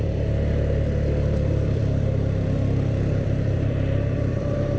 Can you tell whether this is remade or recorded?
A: remade